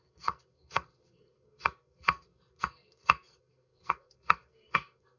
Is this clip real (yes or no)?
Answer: no